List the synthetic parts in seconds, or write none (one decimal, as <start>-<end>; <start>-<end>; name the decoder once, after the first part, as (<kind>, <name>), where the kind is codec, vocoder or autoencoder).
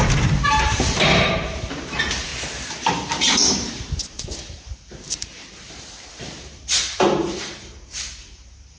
0.0-8.8 (vocoder, BigVGAN v2)